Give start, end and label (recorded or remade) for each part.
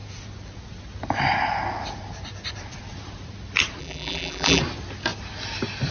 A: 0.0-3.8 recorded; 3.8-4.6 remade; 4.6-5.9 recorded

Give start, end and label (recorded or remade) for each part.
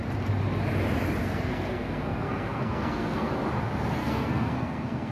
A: 0.0-1.2 recorded; 1.2-3.3 remade; 3.3-4.0 recorded; 4.0-5.1 remade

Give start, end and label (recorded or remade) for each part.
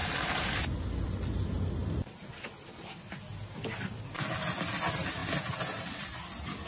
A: 0.0-6.7 recorded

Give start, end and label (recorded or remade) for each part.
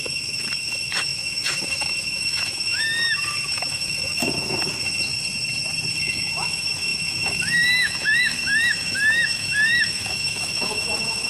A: 0.0-5.1 remade; 5.1-5.9 recorded; 5.9-11.3 remade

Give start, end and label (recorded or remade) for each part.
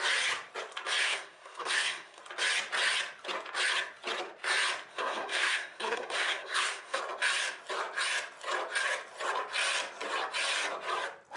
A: 0.0-1.0 recorded; 1.0-2.2 remade; 2.2-4.9 recorded; 4.9-7.0 remade; 7.0-11.4 recorded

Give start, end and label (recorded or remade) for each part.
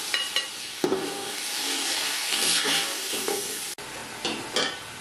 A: 0.0-0.6 recorded; 0.6-3.6 remade; 3.6-5.0 recorded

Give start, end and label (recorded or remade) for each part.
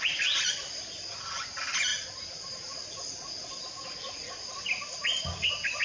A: 0.0-5.8 recorded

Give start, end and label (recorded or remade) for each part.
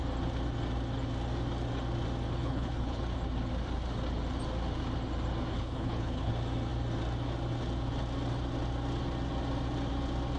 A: 0.0-2.4 recorded; 2.4-3.0 remade; 3.0-5.5 recorded; 5.5-6.3 remade; 6.3-10.4 recorded